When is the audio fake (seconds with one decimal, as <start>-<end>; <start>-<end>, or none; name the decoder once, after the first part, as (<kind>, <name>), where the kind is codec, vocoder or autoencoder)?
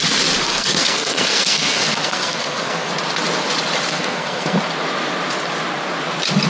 0.5-2.9 (codec, SNAC); 3.9-4.6